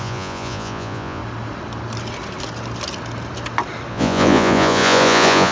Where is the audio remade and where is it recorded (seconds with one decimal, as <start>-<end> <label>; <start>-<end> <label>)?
0.0-1.2 remade; 1.2-3.9 recorded; 3.9-5.5 remade